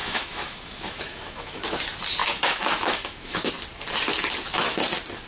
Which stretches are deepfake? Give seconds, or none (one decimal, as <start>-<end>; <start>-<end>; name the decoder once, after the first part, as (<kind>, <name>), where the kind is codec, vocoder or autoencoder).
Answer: 0.0-1.6 (autoencoder, DAC-VAE); 2.2-3.5